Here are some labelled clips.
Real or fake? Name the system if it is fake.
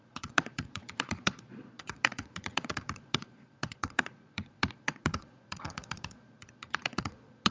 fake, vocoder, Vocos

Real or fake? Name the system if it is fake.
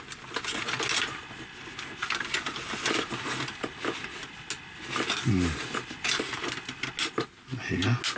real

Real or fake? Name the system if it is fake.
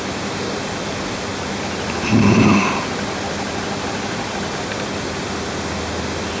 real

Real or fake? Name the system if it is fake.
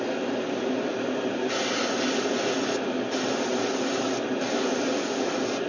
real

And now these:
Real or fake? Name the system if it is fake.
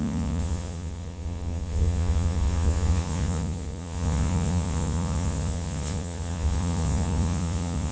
fake, vocoder, Vocos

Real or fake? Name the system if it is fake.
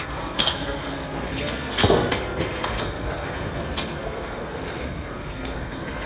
fake, codec, SNAC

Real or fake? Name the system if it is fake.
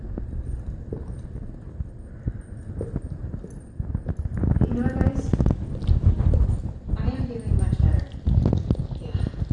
real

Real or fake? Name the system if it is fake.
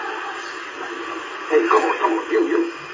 real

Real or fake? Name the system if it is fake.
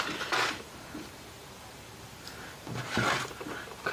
fake, vocoder, BigVGAN v2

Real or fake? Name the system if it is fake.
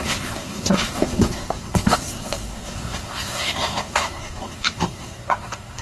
fake, codec, SNAC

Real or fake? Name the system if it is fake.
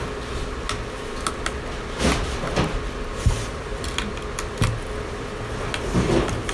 real